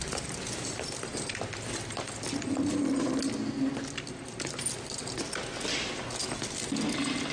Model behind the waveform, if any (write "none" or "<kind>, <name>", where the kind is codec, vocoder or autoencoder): none